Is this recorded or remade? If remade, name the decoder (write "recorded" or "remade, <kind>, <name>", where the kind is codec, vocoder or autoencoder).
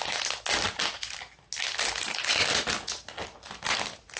recorded